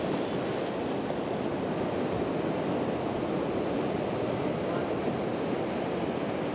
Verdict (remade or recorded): recorded